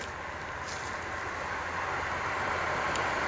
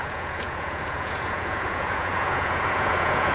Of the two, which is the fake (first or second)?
second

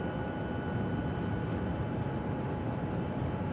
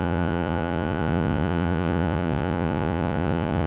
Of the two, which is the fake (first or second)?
second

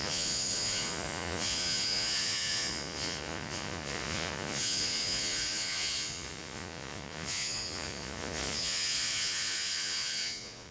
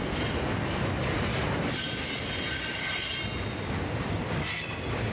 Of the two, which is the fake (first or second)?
first